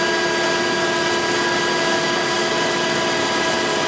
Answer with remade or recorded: recorded